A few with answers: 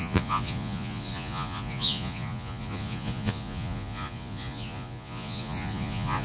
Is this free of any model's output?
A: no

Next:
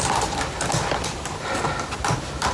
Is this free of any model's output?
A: yes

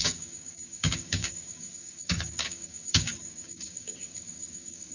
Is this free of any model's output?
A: no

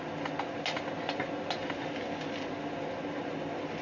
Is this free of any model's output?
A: yes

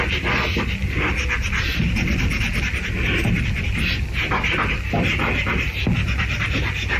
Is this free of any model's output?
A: yes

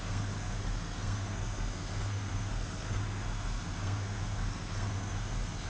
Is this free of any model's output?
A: no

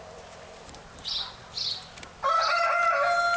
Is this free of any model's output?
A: yes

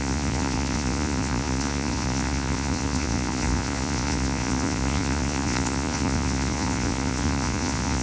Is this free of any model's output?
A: no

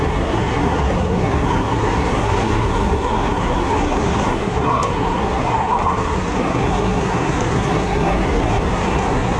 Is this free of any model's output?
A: no